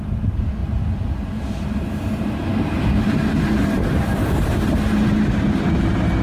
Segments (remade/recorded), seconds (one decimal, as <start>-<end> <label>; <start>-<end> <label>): 0.0-6.2 recorded